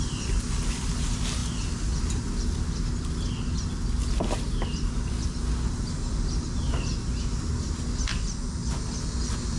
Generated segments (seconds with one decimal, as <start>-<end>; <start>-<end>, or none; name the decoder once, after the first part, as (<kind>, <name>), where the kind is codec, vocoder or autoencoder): none